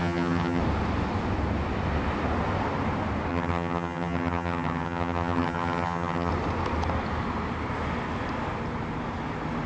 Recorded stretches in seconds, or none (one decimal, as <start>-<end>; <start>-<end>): 0.6-3.3; 6.3-9.7